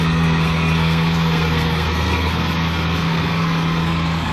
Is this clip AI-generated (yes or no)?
yes